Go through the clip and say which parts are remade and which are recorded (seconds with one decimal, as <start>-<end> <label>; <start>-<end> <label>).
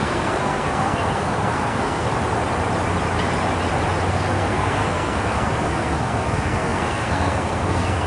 0.0-2.1 remade; 2.1-4.1 recorded; 4.1-8.1 remade